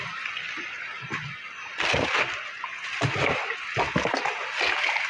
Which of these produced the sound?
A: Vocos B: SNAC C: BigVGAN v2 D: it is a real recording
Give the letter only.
D